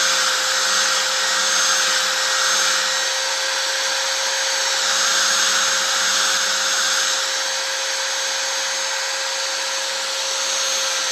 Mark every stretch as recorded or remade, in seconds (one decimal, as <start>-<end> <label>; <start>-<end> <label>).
0.0-11.1 recorded